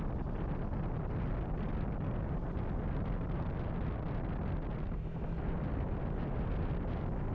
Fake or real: real